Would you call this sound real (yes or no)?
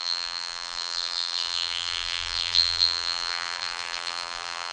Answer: no